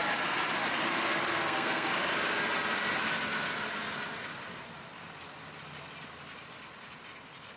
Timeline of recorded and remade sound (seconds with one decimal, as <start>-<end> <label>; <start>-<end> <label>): 0.0-1.3 recorded; 1.3-1.9 remade; 1.9-7.6 recorded